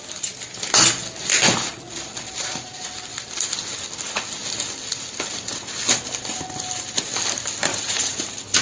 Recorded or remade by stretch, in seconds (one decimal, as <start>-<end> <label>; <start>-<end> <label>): 0.0-7.7 recorded; 7.7-8.2 remade; 8.2-8.6 recorded